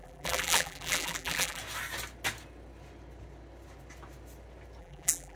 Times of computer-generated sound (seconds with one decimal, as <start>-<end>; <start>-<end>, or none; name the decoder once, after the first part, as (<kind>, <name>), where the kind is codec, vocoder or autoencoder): 0.0-1.6 (vocoder, BigVGAN v2); 4.8-5.4